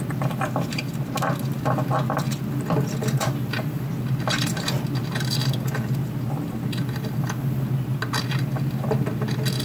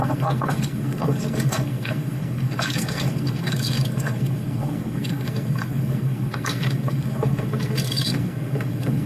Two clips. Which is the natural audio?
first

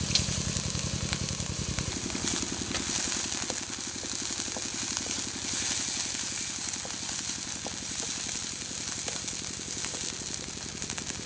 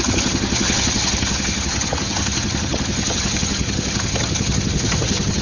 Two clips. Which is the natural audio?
first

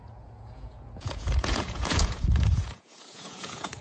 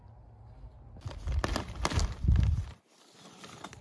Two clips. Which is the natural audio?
second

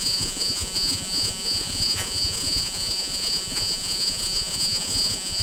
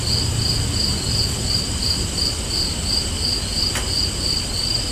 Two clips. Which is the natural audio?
second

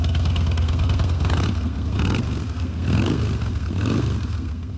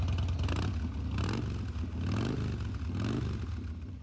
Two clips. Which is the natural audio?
second